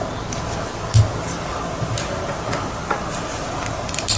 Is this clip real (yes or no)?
yes